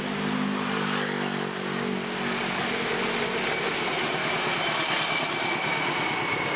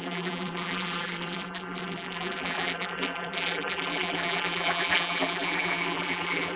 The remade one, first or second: second